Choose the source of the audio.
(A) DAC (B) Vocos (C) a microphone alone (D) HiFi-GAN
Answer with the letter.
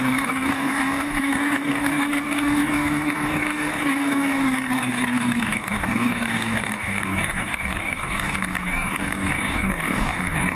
A